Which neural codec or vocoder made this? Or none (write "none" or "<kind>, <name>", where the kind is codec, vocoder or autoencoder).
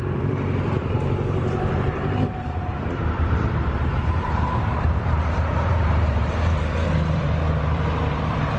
vocoder, BigVGAN v2